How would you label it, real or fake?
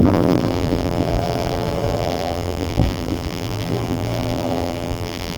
fake